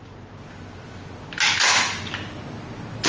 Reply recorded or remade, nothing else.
recorded